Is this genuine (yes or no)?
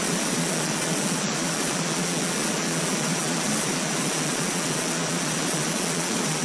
no